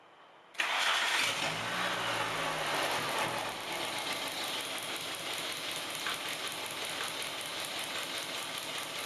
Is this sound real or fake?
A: real